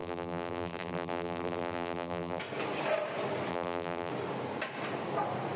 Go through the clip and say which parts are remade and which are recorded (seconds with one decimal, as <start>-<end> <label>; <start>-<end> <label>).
0.0-2.4 remade; 2.4-3.5 recorded; 3.5-4.1 remade; 4.1-5.6 recorded